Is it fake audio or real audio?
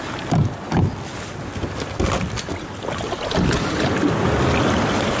real